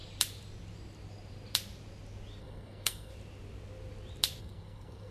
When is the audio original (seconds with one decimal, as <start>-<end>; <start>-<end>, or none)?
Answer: 0.0-2.4; 3.1-4.4